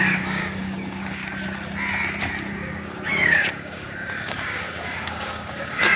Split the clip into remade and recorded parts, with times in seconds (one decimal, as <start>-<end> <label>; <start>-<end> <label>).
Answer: 0.0-1.2 remade; 1.2-2.2 recorded; 2.2-6.0 remade